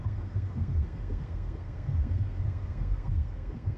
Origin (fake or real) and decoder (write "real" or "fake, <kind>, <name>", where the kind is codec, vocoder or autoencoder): fake, codec, SNAC